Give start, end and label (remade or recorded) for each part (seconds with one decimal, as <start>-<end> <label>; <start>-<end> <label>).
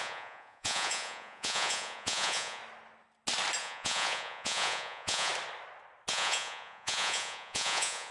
0.0-2.6 remade; 2.6-3.6 recorded; 3.6-5.3 remade; 5.3-6.1 recorded; 6.1-8.1 remade